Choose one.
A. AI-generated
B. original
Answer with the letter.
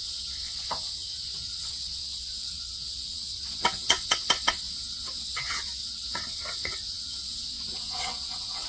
A